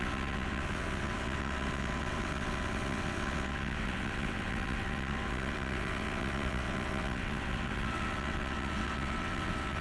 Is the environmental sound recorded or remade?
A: remade